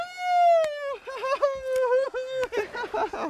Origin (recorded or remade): recorded